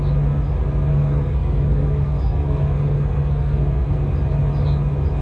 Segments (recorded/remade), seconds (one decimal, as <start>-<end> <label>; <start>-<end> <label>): 0.0-0.9 recorded; 0.9-4.0 remade; 4.0-5.2 recorded